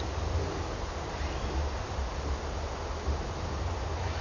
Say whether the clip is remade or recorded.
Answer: recorded